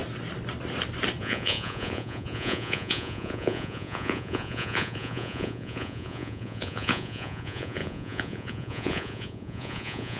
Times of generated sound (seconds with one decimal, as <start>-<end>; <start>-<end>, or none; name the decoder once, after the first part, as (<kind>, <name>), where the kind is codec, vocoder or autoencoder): 1.2-10.2 (vocoder, Vocos)